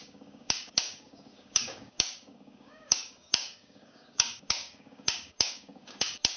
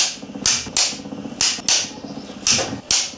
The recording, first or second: second